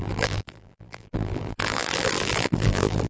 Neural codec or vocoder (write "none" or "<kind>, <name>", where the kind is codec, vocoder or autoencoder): vocoder, BigVGAN v2